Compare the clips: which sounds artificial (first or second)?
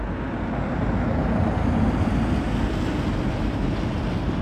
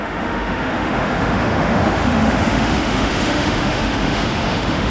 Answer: second